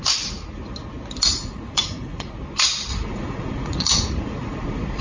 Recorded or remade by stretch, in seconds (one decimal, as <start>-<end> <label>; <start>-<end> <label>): 0.0-1.3 recorded; 1.3-2.3 remade; 2.3-2.9 recorded; 2.9-5.0 remade